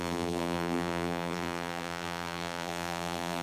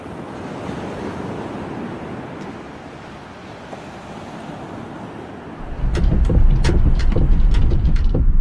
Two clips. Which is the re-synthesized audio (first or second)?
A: first